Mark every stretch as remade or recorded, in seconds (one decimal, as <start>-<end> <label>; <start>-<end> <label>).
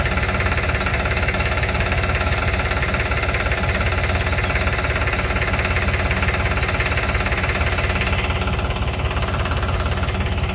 0.0-0.9 recorded; 0.9-2.4 remade; 2.4-10.5 recorded